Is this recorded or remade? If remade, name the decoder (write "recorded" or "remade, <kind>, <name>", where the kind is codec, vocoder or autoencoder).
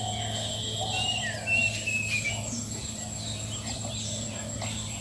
recorded